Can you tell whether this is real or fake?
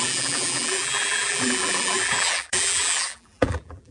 fake